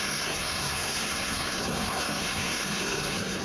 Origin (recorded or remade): remade